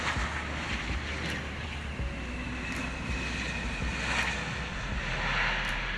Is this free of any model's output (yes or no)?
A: yes